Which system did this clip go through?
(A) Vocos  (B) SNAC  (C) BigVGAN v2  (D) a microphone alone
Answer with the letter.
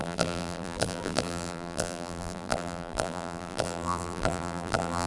C